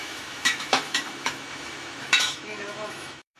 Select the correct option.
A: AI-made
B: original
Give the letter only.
A